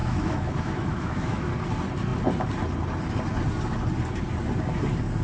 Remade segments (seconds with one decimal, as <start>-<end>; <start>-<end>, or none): 0.0-1.5